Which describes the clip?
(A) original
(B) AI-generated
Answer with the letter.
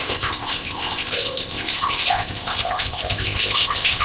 B